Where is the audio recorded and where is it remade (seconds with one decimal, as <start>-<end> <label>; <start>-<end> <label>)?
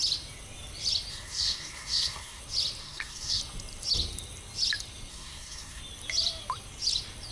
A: 0.0-1.1 recorded; 1.1-2.4 remade; 2.4-2.8 recorded; 2.8-3.4 remade; 3.4-5.1 recorded; 5.1-5.8 remade; 5.8-7.3 recorded